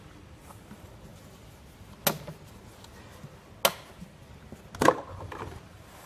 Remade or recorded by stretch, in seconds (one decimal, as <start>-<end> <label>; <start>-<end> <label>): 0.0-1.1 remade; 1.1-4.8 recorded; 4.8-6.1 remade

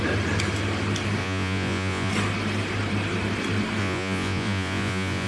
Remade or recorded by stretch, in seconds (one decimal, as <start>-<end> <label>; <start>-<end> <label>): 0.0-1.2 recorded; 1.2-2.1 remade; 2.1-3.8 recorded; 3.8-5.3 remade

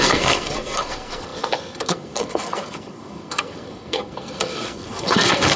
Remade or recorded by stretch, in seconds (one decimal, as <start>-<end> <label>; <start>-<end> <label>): 0.0-5.6 remade

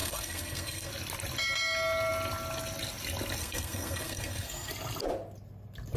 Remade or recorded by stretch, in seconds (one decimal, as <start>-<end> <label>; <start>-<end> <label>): 0.0-0.9 remade; 0.9-3.4 recorded; 3.4-4.7 remade; 4.7-6.0 recorded